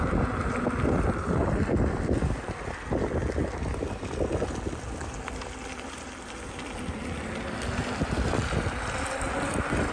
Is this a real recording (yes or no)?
yes